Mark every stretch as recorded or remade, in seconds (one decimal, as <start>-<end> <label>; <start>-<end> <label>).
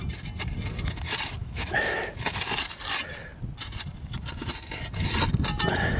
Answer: 0.0-1.4 recorded; 1.4-2.0 remade; 2.0-6.0 recorded